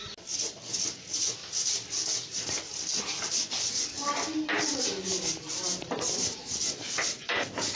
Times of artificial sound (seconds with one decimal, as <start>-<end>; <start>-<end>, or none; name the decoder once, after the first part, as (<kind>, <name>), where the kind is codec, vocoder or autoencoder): none